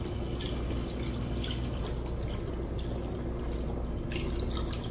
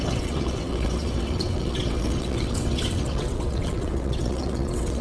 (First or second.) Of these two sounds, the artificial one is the second